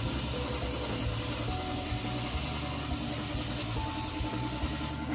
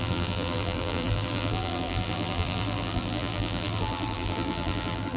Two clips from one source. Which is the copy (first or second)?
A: second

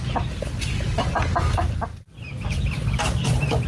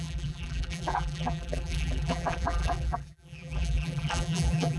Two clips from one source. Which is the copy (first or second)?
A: second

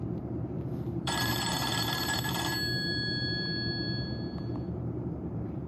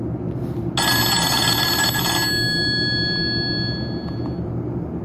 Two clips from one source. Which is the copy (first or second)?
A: first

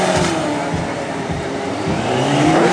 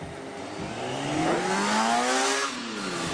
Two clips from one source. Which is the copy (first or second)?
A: first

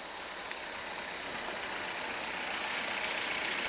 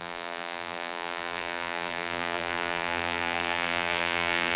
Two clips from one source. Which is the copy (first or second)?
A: second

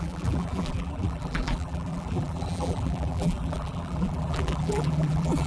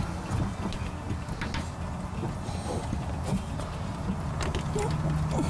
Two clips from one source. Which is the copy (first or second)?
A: first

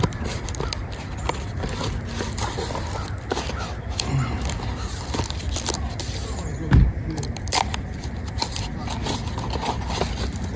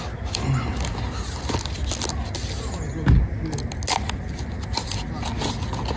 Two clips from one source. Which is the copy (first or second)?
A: first